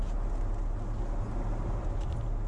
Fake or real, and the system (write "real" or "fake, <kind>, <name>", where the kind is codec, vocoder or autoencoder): real